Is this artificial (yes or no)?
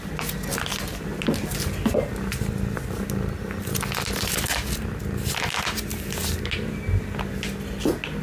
no